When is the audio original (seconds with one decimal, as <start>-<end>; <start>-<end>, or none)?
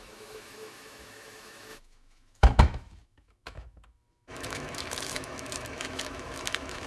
none